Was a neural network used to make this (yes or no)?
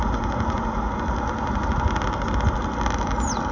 no